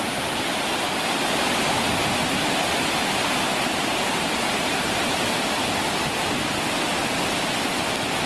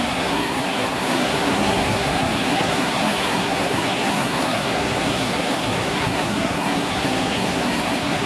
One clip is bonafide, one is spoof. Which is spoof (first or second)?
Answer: second